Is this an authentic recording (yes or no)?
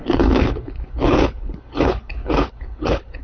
no